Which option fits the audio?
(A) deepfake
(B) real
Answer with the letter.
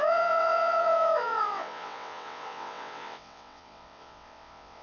A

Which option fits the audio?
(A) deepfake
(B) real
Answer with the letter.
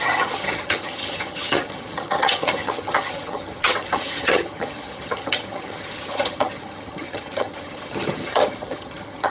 A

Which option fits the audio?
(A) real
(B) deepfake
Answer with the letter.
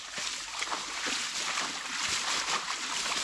A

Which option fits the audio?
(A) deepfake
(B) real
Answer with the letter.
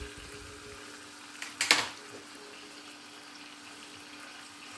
B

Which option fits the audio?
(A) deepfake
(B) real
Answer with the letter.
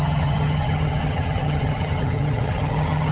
A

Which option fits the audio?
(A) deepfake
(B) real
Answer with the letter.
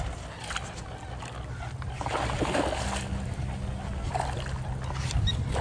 B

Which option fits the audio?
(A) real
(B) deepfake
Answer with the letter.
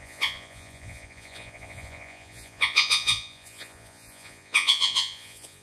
B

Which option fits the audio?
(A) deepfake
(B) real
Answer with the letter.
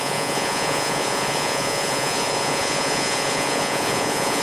A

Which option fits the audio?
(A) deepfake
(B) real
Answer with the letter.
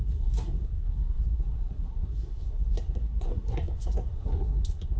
A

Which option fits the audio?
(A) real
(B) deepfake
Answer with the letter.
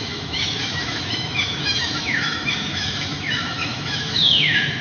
B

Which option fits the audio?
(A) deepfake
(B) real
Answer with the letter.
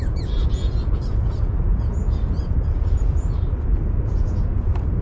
A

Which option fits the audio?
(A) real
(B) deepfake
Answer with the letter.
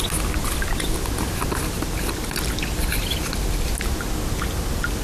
A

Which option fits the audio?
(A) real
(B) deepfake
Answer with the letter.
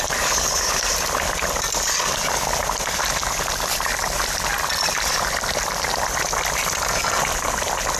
A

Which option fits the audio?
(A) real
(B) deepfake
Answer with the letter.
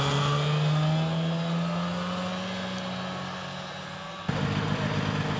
A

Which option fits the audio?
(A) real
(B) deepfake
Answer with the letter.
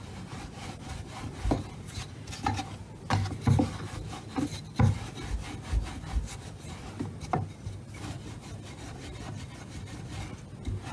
A